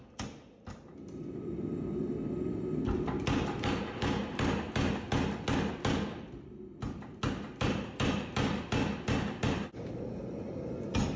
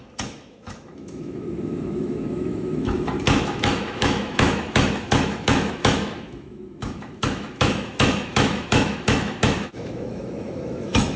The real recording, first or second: first